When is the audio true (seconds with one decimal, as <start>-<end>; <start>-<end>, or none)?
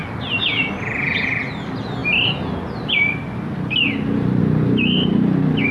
0.0-5.7